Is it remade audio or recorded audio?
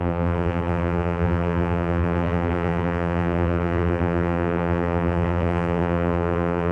remade